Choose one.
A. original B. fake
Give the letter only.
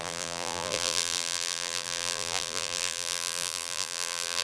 B